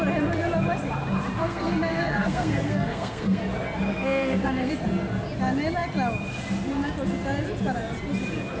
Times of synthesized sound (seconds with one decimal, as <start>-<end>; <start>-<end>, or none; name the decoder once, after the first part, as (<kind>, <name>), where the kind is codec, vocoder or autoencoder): 1.4-3.4 (codec, SNAC); 3.9-4.7